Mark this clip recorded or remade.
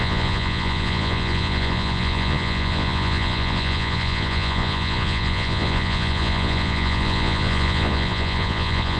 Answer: remade